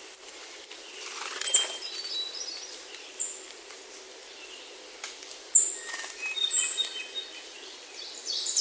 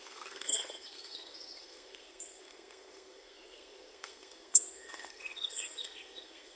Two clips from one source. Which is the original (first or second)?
first